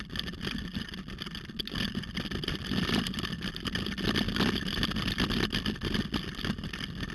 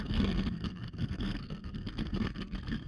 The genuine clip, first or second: first